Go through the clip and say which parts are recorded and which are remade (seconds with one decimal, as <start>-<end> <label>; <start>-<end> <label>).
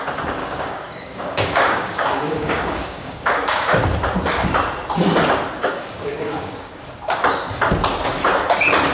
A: 0.0-0.4 recorded; 0.4-3.8 remade; 3.8-5.6 recorded; 5.6-6.7 remade; 6.7-8.9 recorded